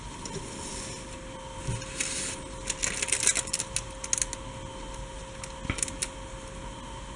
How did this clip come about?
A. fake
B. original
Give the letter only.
B